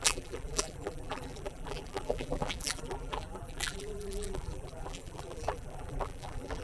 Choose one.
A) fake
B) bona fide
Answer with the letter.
A